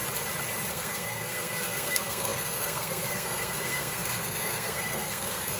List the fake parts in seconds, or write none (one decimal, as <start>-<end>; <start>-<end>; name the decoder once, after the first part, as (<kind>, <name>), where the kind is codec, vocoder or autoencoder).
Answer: 0.7-5.6 (codec, SNAC)